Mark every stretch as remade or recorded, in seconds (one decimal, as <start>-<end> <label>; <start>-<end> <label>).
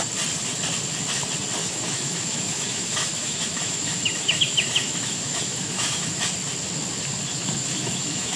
0.0-1.6 recorded; 1.6-6.2 remade; 6.2-7.3 recorded; 7.3-8.4 remade